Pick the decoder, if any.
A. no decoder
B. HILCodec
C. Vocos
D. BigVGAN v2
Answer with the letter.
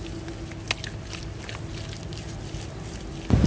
A